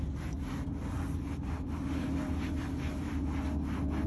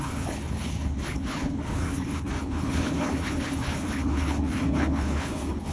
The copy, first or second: second